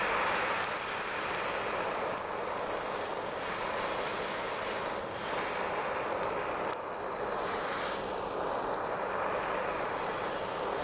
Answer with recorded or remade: recorded